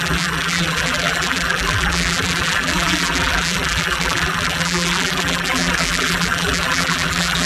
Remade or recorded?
remade